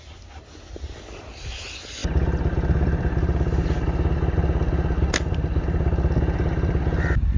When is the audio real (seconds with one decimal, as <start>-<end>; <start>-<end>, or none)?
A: 0.0-7.4